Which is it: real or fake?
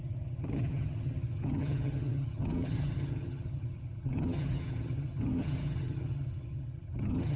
fake